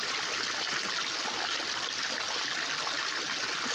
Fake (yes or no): no